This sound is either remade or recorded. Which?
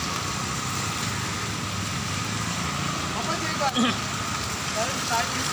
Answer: recorded